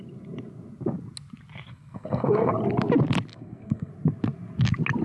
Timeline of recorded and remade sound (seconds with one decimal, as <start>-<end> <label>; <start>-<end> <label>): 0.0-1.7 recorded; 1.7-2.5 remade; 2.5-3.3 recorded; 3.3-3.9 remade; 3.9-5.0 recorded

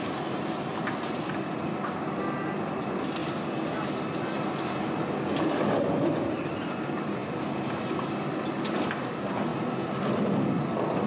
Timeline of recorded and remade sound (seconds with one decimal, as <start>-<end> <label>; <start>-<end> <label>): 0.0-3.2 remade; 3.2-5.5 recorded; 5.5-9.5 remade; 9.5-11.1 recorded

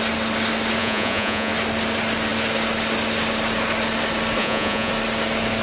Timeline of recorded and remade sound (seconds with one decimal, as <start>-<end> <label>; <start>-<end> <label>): 0.0-0.8 recorded; 0.8-1.5 remade; 1.5-4.4 recorded; 4.4-4.9 remade; 4.9-5.6 recorded